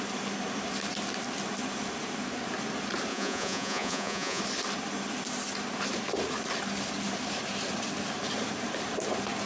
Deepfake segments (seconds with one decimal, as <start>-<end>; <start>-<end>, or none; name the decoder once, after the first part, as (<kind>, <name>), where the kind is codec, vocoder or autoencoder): 3.1-4.4 (vocoder, Vocos)